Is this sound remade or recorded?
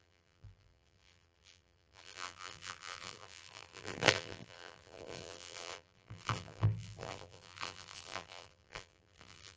remade